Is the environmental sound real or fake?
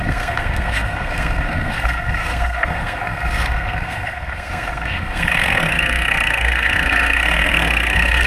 fake